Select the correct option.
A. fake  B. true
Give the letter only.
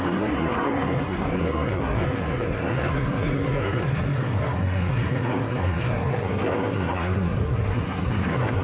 A